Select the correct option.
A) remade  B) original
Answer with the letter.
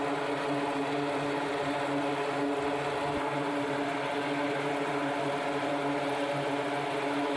B